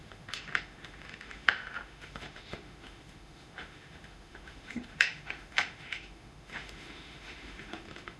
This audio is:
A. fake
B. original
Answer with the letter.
A